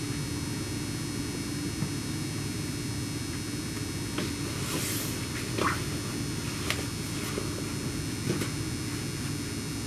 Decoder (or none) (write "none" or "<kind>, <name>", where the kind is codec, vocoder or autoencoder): none